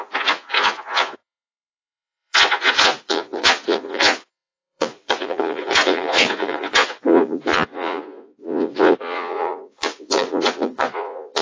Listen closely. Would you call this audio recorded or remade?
remade